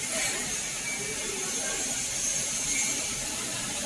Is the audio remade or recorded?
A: recorded